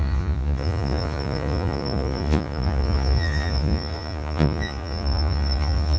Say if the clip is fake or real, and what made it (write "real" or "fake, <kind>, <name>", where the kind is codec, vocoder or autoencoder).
fake, vocoder, Vocos